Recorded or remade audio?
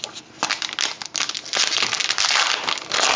recorded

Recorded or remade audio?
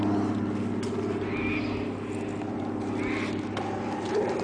recorded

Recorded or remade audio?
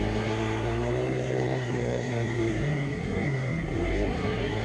remade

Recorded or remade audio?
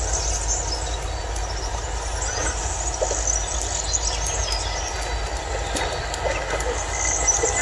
recorded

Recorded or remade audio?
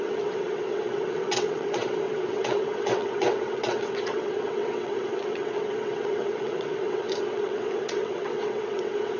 remade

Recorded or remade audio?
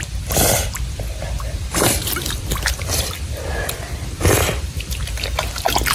remade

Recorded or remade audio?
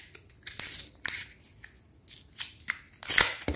recorded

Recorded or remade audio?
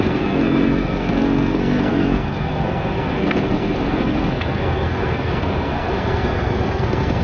remade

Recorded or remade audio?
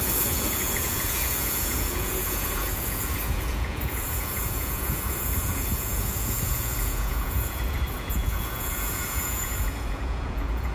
remade